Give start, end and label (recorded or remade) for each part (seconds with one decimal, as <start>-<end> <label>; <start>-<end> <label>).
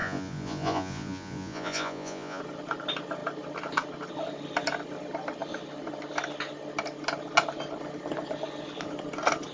0.0-2.4 remade; 2.4-9.5 recorded